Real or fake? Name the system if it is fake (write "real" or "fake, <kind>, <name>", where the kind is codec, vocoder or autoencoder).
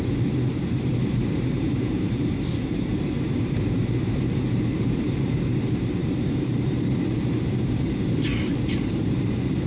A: fake, vocoder, BigVGAN v2